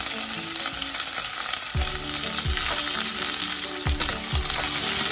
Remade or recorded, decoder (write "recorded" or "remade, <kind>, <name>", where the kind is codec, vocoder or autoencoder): recorded